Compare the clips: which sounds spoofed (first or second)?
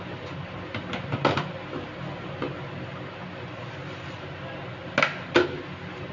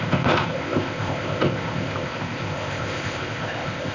second